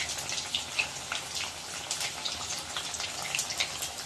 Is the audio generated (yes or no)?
no